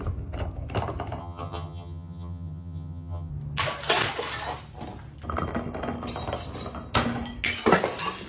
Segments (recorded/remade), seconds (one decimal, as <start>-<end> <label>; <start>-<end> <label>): 0.0-1.2 recorded; 1.2-3.3 remade; 3.3-8.3 recorded